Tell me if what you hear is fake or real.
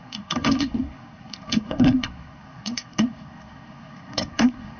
fake